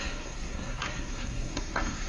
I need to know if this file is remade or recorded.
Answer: remade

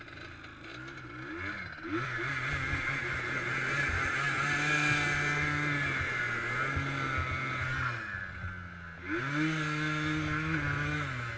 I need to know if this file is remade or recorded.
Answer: recorded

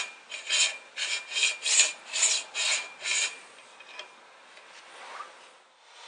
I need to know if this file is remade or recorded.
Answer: recorded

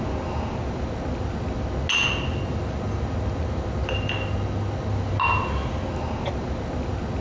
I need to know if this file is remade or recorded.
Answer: recorded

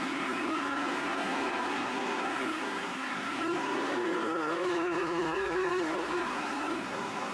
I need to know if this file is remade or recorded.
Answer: remade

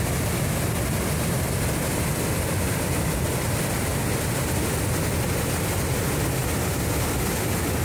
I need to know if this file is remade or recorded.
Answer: recorded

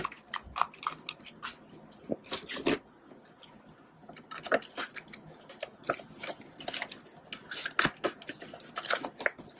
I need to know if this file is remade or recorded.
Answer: recorded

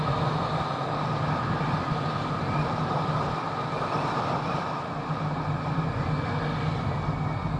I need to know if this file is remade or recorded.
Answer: recorded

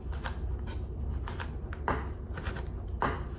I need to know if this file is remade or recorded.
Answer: recorded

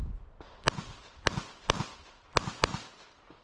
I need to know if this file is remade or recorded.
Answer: recorded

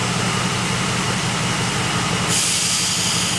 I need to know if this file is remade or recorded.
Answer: recorded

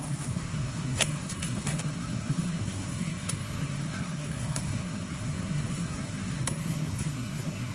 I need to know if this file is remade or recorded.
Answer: remade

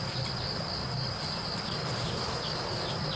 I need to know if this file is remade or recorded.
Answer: recorded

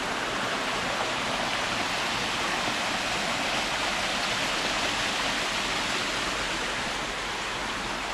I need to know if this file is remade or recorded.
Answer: recorded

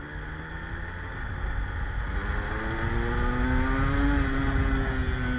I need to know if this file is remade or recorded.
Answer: recorded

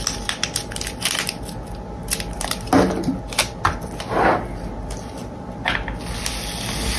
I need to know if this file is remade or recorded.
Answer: recorded